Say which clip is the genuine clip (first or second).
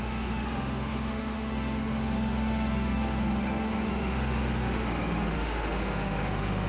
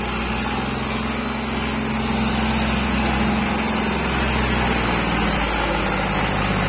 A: second